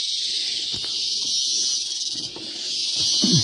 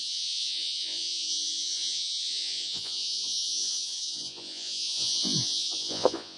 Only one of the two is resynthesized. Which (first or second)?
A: second